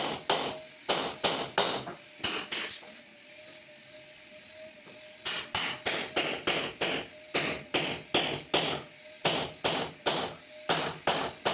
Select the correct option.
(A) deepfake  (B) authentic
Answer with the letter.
B